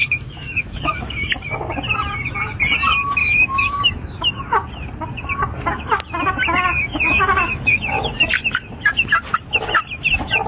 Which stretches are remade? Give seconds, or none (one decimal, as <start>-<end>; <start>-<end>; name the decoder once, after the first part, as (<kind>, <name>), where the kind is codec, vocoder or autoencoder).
0.0-1.1 (autoencoder, DAC-VAE); 3.2-4.4; 6.7-8.0